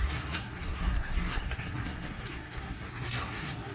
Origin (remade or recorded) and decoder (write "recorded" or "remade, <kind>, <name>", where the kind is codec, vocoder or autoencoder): remade, codec, SNAC